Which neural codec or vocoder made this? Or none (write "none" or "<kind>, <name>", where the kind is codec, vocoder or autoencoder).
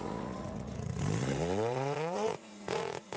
vocoder, Vocos